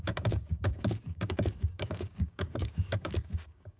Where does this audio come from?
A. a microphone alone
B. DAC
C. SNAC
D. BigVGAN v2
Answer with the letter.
B